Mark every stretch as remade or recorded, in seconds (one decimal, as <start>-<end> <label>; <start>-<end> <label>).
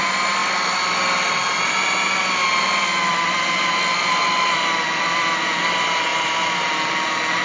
0.0-7.4 recorded